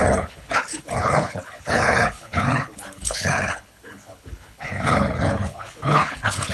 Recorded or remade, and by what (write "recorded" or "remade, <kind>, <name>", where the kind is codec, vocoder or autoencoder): remade, codec, HILCodec